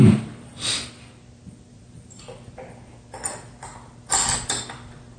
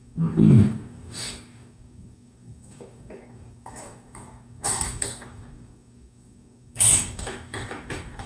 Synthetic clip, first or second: second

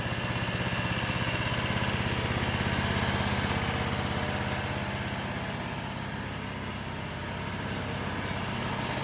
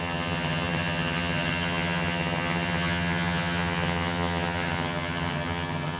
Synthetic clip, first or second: second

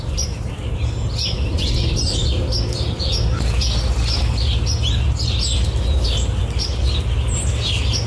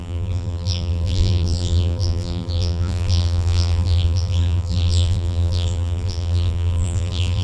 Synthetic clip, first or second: second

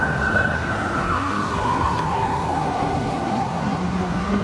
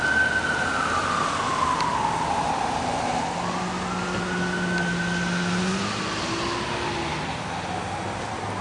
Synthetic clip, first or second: first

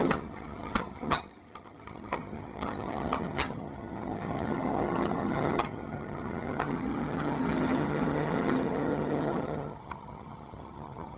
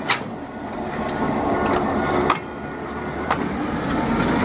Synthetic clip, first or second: first